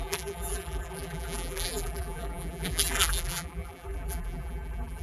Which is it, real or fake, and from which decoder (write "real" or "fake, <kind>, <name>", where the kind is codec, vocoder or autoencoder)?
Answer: fake, vocoder, BigVGAN v2